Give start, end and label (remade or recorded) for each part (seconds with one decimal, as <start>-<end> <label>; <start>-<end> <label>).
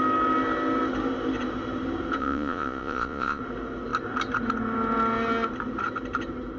0.0-2.2 recorded; 2.2-3.4 remade; 3.4-6.6 recorded